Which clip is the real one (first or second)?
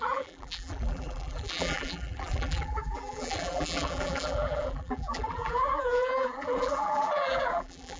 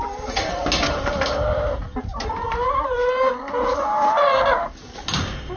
second